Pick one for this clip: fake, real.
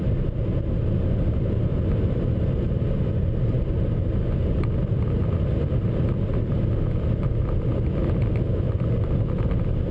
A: real